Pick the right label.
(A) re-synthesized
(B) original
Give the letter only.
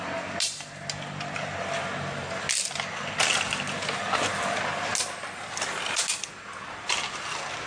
B